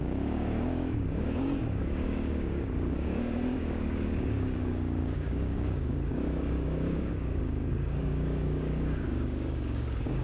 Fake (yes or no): yes